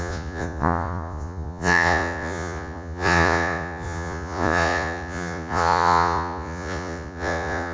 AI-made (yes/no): yes